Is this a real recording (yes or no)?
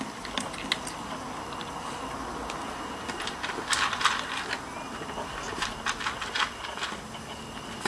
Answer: yes